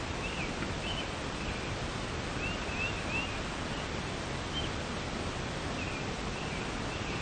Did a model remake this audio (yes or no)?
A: no